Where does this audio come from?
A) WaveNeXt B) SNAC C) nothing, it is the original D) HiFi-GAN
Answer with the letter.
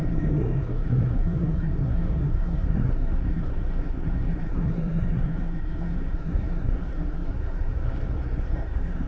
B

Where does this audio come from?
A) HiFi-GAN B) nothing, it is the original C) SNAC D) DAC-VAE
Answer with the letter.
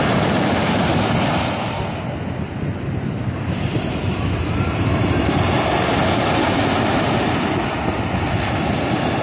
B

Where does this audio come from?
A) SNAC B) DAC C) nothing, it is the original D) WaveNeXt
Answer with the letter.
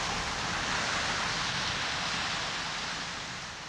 C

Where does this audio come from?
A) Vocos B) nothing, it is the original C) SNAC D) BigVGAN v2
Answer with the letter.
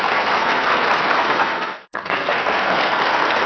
C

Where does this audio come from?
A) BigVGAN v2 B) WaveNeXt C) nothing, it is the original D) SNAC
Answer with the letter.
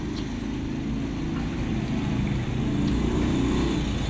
C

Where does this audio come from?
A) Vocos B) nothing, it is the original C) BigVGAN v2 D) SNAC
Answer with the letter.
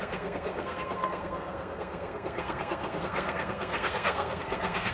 D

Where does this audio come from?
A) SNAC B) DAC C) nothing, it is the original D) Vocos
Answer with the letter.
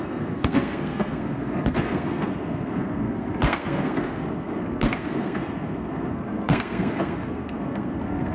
A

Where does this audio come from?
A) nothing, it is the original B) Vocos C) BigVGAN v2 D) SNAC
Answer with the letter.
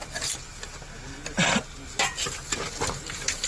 A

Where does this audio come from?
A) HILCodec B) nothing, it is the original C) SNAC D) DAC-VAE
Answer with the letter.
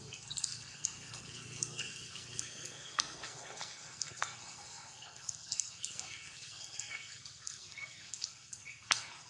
C